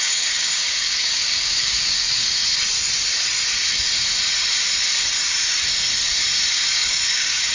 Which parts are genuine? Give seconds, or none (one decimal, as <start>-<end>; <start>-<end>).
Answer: 2.4-6.5